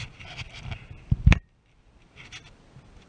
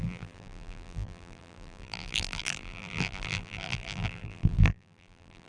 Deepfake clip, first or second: second